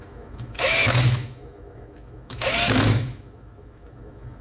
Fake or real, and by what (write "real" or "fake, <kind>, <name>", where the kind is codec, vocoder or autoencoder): fake, autoencoder, DAC-VAE